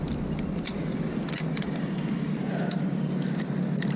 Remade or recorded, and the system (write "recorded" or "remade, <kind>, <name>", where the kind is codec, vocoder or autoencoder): recorded